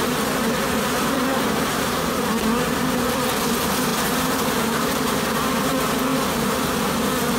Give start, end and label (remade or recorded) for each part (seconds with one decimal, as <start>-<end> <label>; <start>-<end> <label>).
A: 0.0-1.3 recorded; 1.3-2.3 remade; 2.3-3.9 recorded; 3.9-5.4 remade; 5.4-7.4 recorded